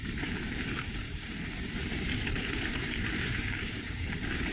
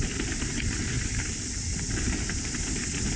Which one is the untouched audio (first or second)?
second